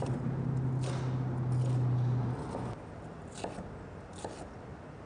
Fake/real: real